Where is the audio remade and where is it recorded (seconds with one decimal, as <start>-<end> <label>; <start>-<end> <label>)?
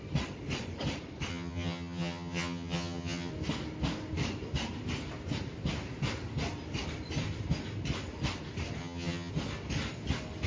0.0-1.3 recorded; 1.3-3.3 remade; 3.3-8.8 recorded; 8.8-9.3 remade; 9.3-10.5 recorded